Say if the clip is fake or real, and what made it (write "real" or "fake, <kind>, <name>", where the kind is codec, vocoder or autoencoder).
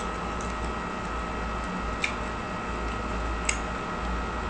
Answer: real